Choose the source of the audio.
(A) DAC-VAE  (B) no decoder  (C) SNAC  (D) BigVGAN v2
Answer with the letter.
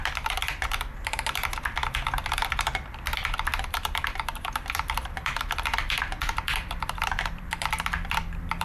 D